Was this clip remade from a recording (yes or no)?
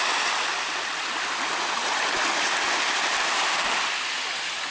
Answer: yes